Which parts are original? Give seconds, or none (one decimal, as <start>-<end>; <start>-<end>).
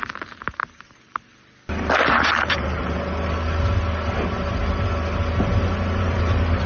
0.6-2.4; 2.8-6.0